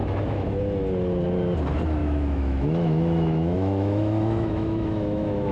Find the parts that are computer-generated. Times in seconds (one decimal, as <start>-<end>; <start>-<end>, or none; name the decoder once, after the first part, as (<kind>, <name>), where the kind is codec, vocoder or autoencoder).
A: 0.0-0.6 (autoencoder, DAC-VAE); 2.0-5.5